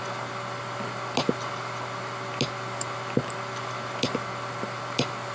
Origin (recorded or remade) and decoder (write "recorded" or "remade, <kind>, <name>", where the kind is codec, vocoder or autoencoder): recorded